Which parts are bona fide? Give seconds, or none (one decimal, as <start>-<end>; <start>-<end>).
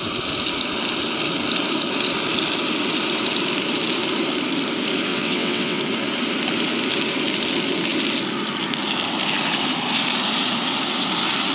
0.0-5.1; 5.8-11.5